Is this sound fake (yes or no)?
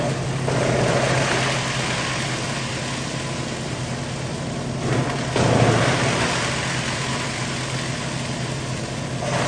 no